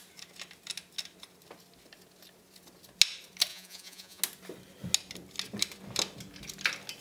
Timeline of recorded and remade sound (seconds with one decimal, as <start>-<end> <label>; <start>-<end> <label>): 0.0-3.5 recorded; 3.5-4.2 remade; 4.2-7.0 recorded